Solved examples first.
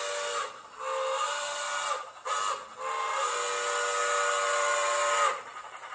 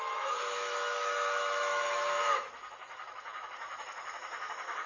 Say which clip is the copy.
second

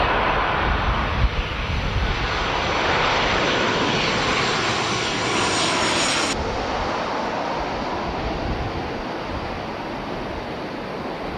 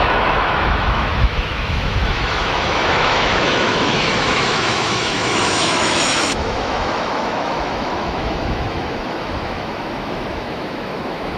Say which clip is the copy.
second